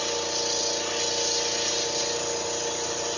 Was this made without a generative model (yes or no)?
yes